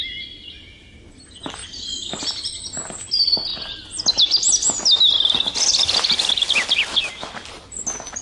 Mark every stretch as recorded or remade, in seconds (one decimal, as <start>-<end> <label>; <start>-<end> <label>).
0.0-8.2 recorded